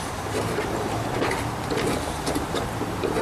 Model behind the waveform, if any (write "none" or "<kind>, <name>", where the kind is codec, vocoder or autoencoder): vocoder, BigVGAN v2